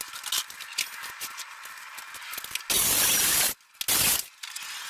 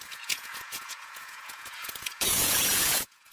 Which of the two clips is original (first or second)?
first